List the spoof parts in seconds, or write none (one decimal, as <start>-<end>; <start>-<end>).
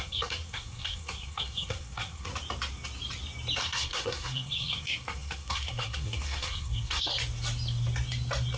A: 0.0-2.3; 3.6-7.1